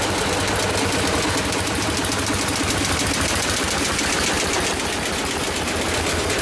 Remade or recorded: recorded